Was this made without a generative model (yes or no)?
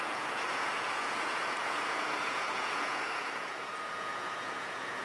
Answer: no